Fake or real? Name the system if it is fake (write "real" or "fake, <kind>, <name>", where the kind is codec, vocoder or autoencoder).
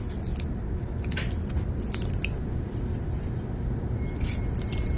real